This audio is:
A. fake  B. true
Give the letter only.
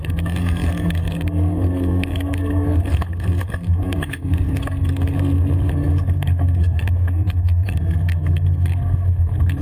A